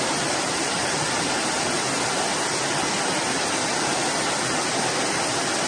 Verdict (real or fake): real